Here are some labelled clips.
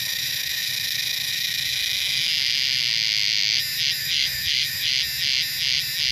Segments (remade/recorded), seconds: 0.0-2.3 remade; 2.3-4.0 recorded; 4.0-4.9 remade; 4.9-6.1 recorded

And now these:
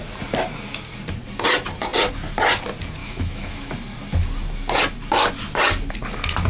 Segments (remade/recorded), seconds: 0.0-3.0 recorded; 3.0-3.7 remade; 3.7-6.5 recorded

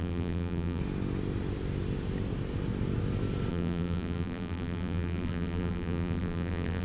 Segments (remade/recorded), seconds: 0.0-0.8 remade; 0.8-3.5 recorded; 3.5-6.8 remade

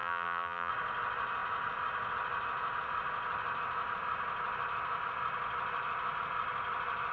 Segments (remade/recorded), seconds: 0.0-0.7 remade; 0.7-7.1 recorded

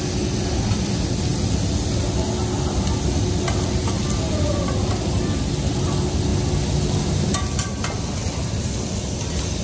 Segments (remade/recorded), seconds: 0.0-9.6 recorded

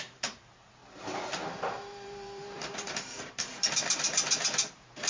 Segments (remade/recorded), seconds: 0.0-0.8 remade; 0.8-1.5 recorded; 1.5-5.1 remade